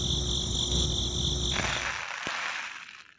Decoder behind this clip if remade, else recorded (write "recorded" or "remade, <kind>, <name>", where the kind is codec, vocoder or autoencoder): recorded